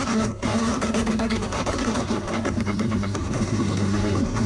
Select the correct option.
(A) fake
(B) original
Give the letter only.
A